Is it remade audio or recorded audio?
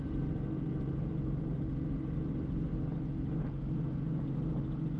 recorded